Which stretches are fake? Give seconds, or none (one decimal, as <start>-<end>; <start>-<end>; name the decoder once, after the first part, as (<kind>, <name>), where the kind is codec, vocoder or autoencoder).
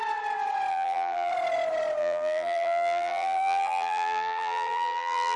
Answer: 0.7-1.3 (vocoder, BigVGAN v2); 2.0-5.4